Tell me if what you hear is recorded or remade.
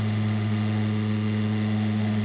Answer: remade